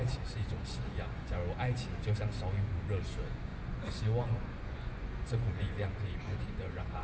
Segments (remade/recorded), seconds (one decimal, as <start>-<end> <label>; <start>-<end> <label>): 0.0-1.4 remade; 1.4-3.0 recorded; 3.0-7.0 remade